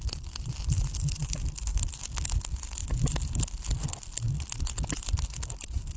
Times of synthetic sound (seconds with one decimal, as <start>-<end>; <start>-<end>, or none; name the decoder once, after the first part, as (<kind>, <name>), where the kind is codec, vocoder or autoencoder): none